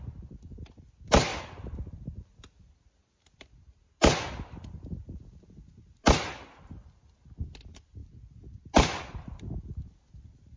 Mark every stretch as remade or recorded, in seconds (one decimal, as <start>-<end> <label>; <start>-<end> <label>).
0.0-10.6 recorded